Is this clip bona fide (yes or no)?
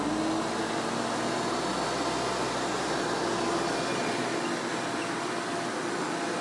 yes